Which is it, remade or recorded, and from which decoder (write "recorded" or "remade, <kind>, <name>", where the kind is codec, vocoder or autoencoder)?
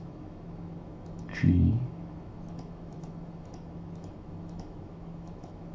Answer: remade, autoencoder, DAC-VAE